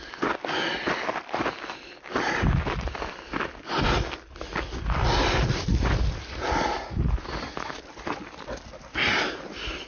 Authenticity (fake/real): real